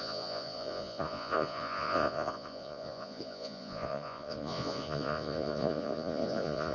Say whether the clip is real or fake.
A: fake